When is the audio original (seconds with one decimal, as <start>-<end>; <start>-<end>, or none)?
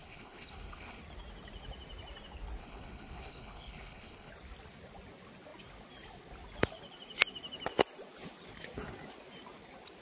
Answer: 1.0-2.6; 4.3-10.0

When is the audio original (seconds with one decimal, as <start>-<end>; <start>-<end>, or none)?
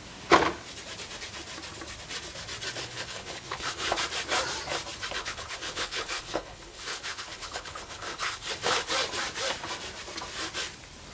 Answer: 0.0-2.8; 4.0-5.2; 8.9-11.1